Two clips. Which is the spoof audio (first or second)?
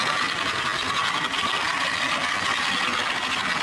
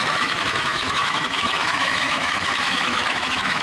second